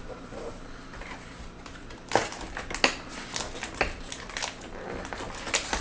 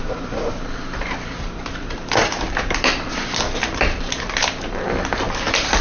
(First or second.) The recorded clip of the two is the first